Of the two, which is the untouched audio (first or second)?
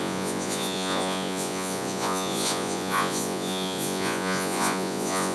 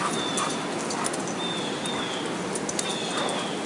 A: second